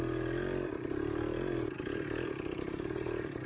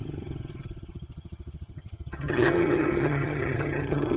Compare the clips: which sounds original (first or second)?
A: first